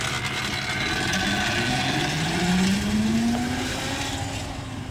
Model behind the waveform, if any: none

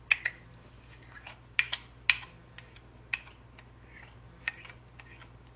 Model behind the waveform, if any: none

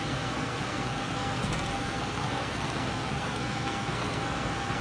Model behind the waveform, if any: codec, SNAC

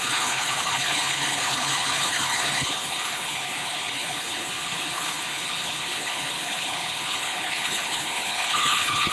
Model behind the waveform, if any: codec, HILCodec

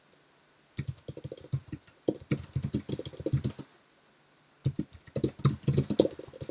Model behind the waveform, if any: none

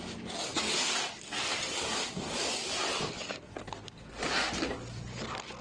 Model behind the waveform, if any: none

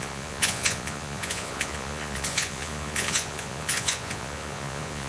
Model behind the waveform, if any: vocoder, Vocos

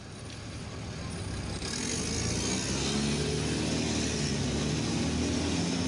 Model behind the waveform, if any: none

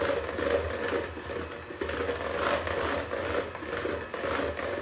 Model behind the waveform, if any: none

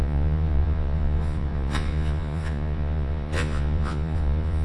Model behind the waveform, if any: vocoder, Vocos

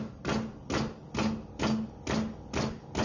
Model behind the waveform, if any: none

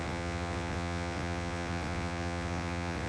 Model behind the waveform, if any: vocoder, WaveNeXt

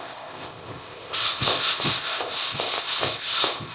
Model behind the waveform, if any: codec, ZipCodec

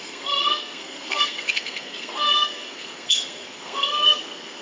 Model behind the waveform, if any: codec, SNAC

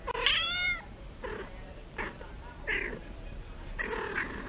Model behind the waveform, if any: vocoder, BigVGAN v2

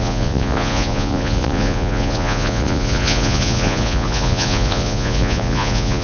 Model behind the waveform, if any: vocoder, Vocos